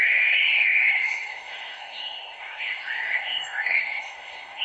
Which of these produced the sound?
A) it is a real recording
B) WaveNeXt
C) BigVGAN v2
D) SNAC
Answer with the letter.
D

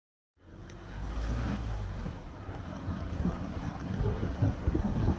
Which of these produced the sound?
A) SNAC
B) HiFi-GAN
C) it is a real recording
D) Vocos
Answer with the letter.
A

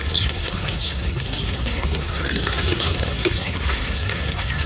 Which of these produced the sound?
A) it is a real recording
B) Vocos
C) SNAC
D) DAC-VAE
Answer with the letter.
C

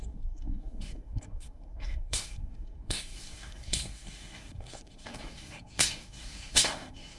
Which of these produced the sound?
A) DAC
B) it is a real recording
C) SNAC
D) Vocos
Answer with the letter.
C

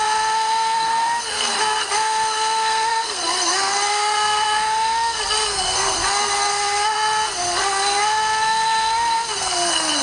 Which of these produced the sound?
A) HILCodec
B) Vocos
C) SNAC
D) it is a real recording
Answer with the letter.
C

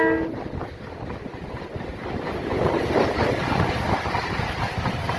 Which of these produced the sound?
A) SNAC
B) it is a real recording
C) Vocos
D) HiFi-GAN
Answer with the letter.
B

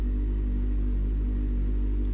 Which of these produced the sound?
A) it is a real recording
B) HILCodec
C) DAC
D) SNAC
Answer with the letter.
A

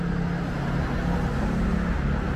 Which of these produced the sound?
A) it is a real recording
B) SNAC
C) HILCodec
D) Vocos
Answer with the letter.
A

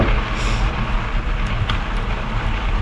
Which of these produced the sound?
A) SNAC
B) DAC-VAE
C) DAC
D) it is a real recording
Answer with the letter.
D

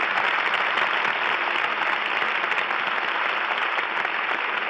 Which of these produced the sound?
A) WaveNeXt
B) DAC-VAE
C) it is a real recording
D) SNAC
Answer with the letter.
C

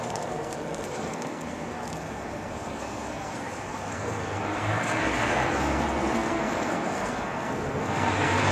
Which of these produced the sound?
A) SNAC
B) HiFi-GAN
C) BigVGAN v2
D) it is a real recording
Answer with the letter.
A